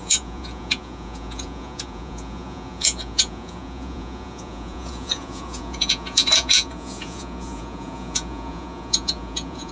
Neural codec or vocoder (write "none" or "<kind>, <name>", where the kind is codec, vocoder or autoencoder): vocoder, Vocos